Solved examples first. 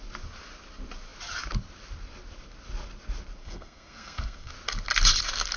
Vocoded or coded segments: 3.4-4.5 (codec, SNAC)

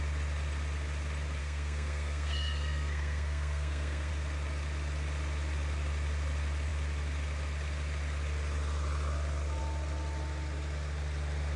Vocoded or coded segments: 1.4-4.1 (codec, SNAC)

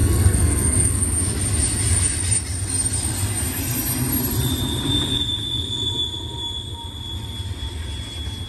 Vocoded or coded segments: 0.0-1.0 (codec, SNAC)

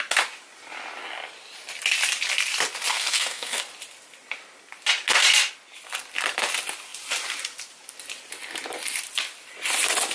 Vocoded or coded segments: 2.9-3.6 (codec, SNAC)

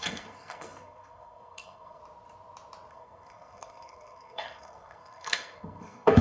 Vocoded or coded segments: 0.0-2.0 (codec, SNAC); 2.9-6.2

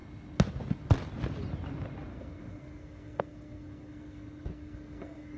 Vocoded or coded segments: 2.1-5.4 (codec, SNAC)

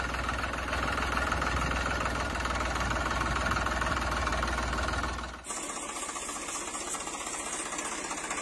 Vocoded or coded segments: none